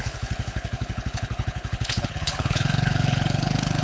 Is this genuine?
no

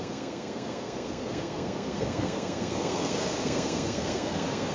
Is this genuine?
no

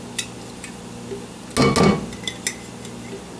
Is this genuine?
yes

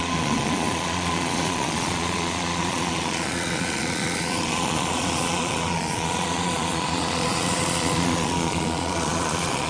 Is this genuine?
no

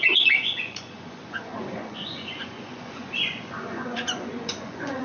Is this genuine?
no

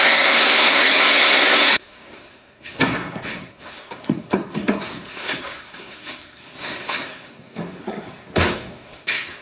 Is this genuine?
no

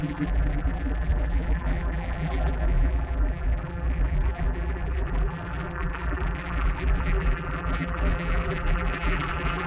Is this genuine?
no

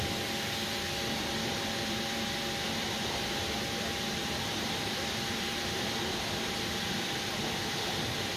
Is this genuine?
no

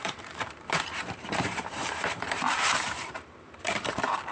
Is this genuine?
no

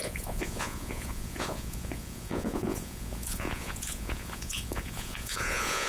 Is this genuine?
no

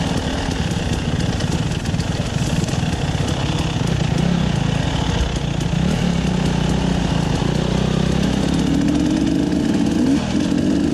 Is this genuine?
yes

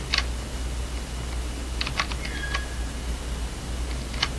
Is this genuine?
yes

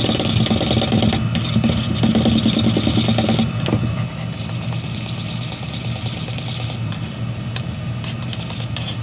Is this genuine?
yes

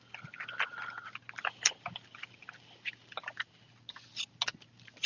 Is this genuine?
yes